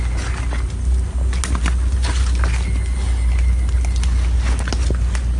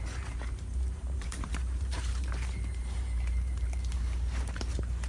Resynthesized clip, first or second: second